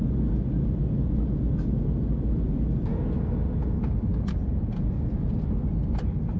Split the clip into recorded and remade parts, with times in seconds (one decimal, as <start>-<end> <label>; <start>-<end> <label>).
0.0-6.4 recorded